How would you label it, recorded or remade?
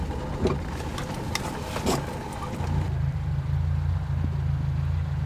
recorded